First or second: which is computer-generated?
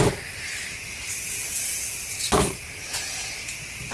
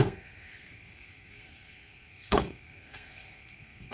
second